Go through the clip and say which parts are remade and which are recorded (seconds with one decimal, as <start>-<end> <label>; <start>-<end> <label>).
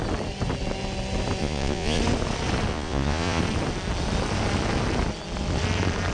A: 0.0-1.4 recorded; 1.4-2.0 remade; 2.0-2.7 recorded; 2.7-3.4 remade; 3.4-6.1 recorded